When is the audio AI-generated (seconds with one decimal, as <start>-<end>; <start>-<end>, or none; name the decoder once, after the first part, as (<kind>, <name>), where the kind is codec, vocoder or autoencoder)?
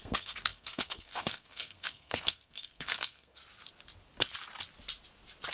0.0-3.4 (codec, SNAC)